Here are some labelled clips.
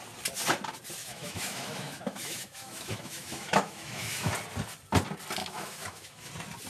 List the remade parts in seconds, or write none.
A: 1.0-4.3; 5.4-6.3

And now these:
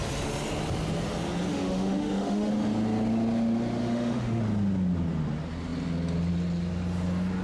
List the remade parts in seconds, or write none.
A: 1.5-2.5; 3.8-4.4

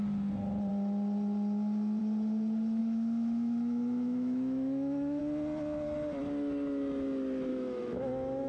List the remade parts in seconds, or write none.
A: 2.8-5.2; 7.5-8.5

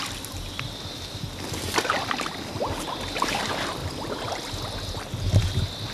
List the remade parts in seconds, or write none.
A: none